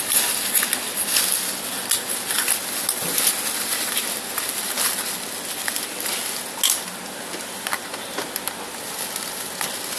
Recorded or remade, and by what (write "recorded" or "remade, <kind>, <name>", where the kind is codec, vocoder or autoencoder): recorded